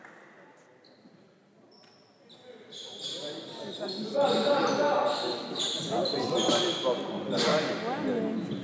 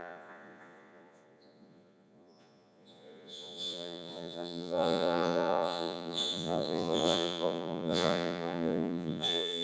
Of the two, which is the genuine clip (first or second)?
first